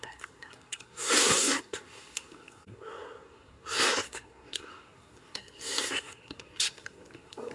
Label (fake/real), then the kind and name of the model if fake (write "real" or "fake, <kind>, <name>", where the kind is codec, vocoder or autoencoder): fake, codec, SNAC